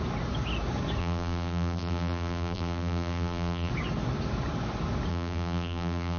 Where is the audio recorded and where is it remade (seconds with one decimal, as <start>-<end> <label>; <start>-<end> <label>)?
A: 0.0-1.0 recorded; 1.0-3.7 remade; 3.7-5.1 recorded; 5.1-6.2 remade